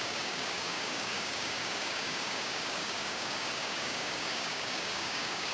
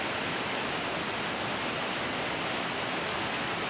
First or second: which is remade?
first